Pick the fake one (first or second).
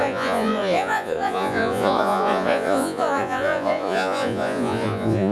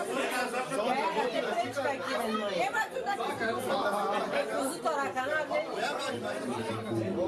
first